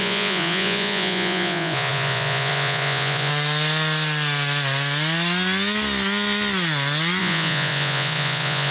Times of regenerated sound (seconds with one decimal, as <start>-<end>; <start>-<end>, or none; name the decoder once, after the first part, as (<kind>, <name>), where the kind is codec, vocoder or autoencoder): 0.0-3.3 (vocoder, Vocos); 7.2-8.7